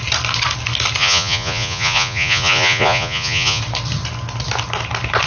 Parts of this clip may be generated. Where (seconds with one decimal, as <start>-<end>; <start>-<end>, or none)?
1.0-3.6